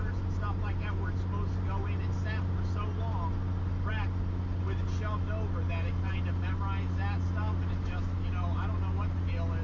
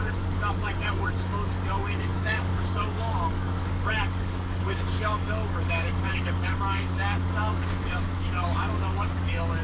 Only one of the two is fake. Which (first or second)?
second